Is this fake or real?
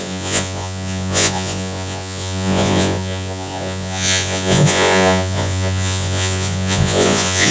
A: fake